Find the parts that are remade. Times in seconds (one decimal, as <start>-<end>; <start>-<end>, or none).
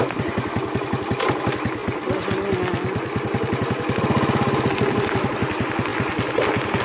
none